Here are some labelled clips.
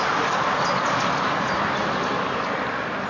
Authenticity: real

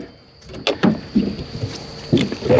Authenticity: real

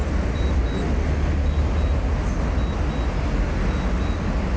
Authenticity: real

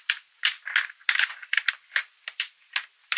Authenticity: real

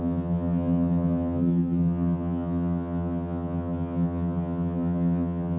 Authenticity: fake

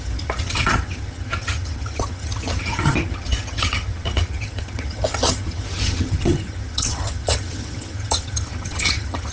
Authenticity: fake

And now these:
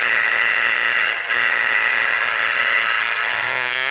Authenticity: fake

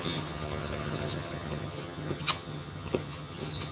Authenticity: fake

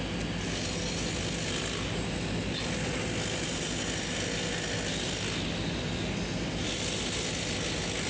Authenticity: real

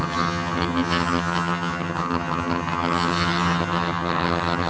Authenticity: fake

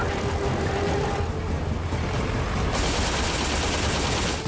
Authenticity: real